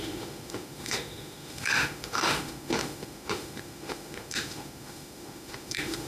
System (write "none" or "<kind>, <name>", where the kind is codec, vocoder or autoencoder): autoencoder, DAC-VAE